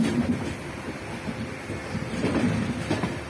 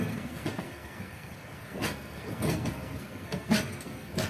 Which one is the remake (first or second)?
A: second